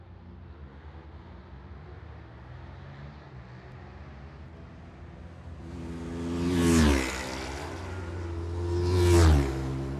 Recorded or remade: recorded